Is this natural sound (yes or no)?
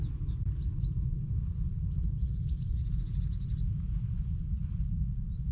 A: yes